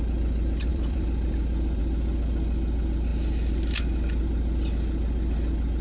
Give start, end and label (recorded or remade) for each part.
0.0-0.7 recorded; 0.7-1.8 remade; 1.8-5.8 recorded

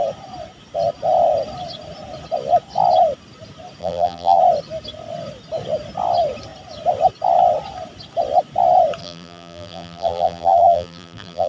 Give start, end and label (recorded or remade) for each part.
0.0-3.8 recorded; 3.8-4.4 remade; 4.4-9.0 recorded; 9.0-11.5 remade

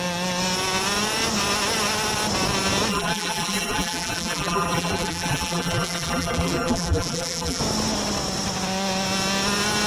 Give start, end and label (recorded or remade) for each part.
0.0-2.9 recorded; 2.9-7.6 remade; 7.6-9.9 recorded

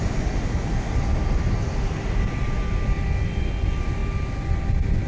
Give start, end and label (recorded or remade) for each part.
0.0-5.1 recorded

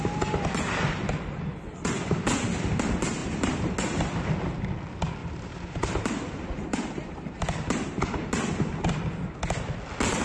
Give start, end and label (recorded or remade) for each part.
0.0-3.2 recorded; 3.2-3.7 remade; 3.7-5.2 recorded; 5.2-8.0 remade; 8.0-10.2 recorded

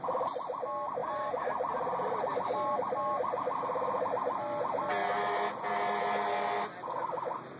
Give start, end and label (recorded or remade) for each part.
0.0-1.0 recorded; 1.0-4.1 remade; 4.1-7.6 recorded